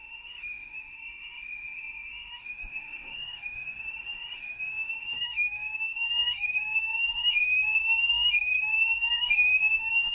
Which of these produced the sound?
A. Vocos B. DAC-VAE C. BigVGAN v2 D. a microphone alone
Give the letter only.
B